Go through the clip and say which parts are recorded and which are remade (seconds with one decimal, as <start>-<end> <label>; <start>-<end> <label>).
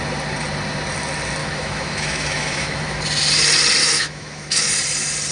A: 0.0-1.4 recorded; 1.4-3.0 remade; 3.0-3.8 recorded; 3.8-4.7 remade; 4.7-5.3 recorded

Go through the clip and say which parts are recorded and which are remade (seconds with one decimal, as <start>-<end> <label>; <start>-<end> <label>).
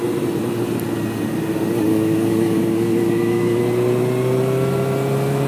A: 0.0-1.9 recorded; 1.9-3.6 remade; 3.6-5.5 recorded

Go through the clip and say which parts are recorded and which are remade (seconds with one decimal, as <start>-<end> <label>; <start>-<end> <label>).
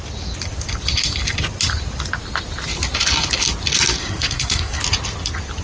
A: 0.0-4.0 recorded; 4.0-4.8 remade; 4.8-5.6 recorded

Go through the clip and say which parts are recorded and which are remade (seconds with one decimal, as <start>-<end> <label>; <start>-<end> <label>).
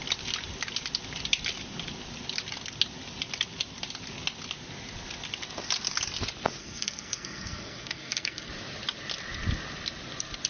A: 0.0-6.6 recorded; 6.6-8.5 remade; 8.5-10.5 recorded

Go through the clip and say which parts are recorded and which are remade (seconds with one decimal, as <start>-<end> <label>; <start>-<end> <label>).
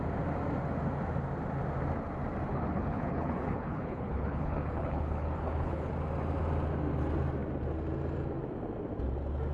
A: 0.0-2.5 recorded; 2.5-5.9 remade; 5.9-9.5 recorded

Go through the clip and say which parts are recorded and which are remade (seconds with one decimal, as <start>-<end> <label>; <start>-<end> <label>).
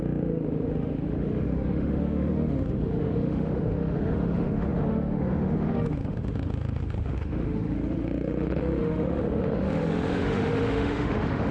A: 0.0-11.5 remade